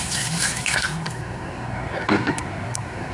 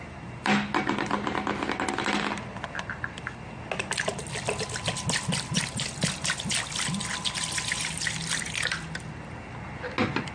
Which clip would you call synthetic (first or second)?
first